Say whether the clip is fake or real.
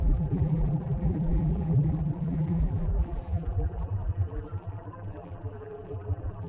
fake